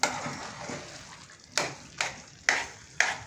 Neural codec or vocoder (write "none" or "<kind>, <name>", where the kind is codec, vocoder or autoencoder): none